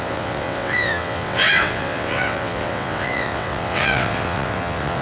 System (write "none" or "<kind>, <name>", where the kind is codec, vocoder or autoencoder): vocoder, WaveNeXt